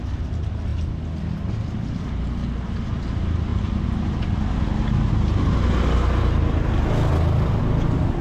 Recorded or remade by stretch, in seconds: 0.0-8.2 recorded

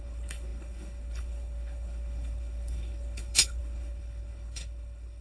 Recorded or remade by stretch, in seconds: 0.0-5.2 remade